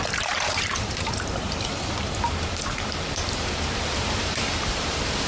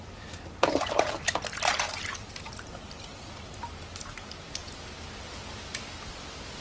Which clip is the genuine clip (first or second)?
second